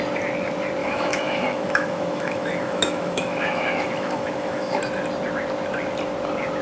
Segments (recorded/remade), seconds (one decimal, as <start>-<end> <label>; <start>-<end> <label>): 0.0-0.8 recorded; 0.8-4.8 remade; 4.8-6.6 recorded